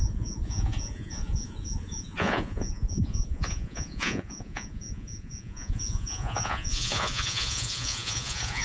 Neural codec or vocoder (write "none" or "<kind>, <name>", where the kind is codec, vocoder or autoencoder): vocoder, Vocos